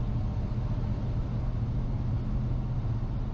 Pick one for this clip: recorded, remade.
recorded